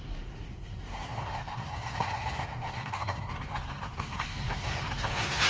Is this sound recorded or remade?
remade